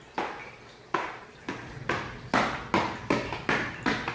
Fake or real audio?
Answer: real